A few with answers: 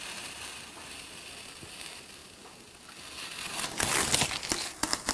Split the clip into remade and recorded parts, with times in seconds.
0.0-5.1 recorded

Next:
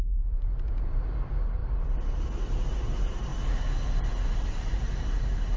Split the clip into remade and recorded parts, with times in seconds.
0.0-1.6 remade; 1.6-2.7 recorded; 2.7-3.3 remade; 3.3-4.5 recorded; 4.5-5.6 remade